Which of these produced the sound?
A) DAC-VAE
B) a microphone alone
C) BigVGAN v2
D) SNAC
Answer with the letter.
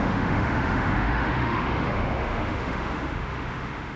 A